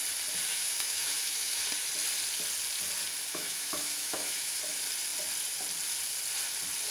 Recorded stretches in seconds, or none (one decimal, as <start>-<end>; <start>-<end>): 0.0-0.5; 1.6-3.3; 4.6-6.9